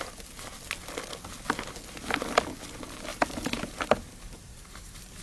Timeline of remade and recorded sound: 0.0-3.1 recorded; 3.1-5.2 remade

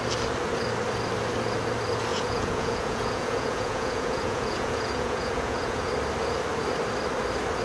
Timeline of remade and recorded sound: 0.0-2.1 recorded; 2.1-5.9 remade; 5.9-7.6 recorded

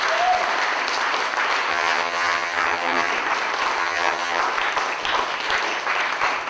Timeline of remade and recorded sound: 0.0-1.7 recorded; 1.7-3.1 remade; 3.1-3.8 recorded; 3.8-4.4 remade; 4.4-6.5 recorded